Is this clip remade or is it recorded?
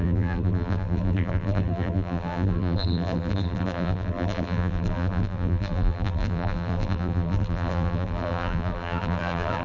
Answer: remade